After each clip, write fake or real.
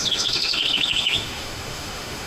fake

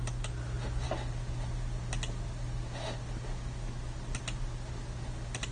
real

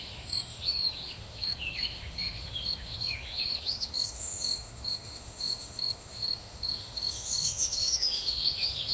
fake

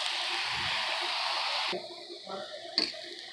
real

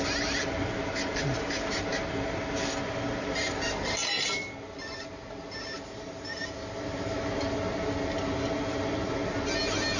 real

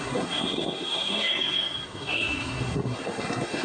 fake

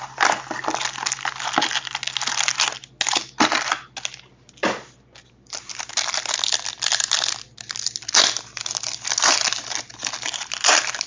real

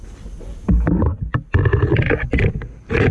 real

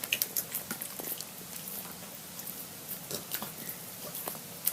real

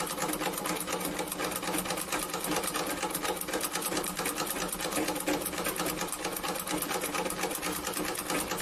real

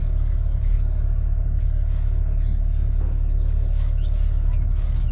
fake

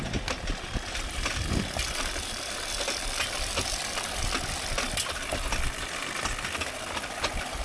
real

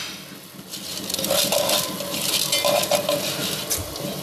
real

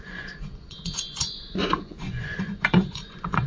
fake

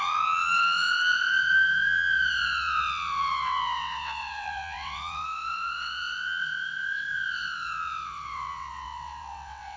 fake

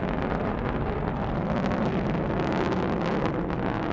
real